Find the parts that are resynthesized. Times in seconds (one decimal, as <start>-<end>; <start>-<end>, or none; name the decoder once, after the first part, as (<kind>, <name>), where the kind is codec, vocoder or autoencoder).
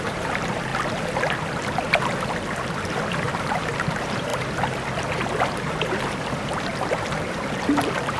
0.0-0.7 (vocoder, BigVGAN v2); 3.1-4.3; 5.6-8.2